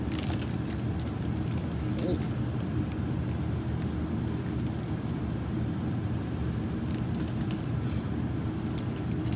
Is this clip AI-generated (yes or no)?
no